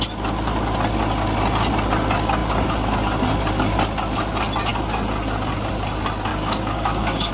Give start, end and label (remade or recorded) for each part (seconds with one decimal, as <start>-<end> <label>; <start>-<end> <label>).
0.0-6.3 recorded; 6.3-7.3 remade

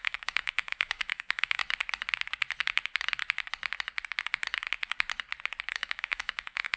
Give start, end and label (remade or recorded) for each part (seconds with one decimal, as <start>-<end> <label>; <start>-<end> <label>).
0.0-1.6 remade; 1.6-5.7 recorded; 5.7-6.8 remade

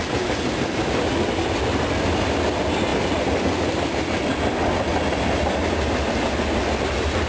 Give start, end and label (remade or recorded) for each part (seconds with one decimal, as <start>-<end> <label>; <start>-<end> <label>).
0.0-7.3 recorded

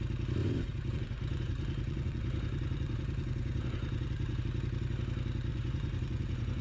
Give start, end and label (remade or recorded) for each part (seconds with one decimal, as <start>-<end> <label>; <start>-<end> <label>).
0.0-0.4 recorded; 0.4-4.4 remade; 4.4-5.5 recorded; 5.5-6.6 remade

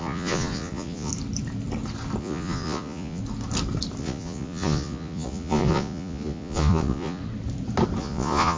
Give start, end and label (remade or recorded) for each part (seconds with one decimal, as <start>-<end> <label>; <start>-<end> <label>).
0.0-1.1 remade; 1.1-2.2 recorded; 2.2-3.2 remade; 3.2-4.0 recorded; 4.0-7.2 remade; 7.2-8.0 recorded; 8.0-8.6 remade

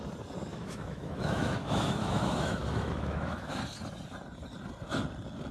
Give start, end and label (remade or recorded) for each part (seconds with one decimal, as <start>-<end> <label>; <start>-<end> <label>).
0.0-0.5 recorded; 0.5-3.6 remade; 3.6-5.5 recorded